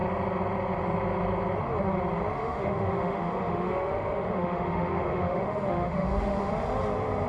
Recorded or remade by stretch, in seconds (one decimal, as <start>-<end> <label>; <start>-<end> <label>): 0.0-2.4 recorded; 2.4-6.5 remade; 6.5-7.3 recorded